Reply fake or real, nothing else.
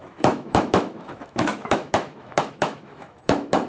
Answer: fake